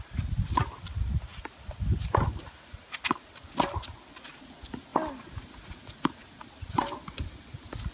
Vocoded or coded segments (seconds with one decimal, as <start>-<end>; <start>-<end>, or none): none